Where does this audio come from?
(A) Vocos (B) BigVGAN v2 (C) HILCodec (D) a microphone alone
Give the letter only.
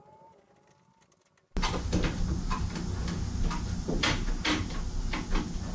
D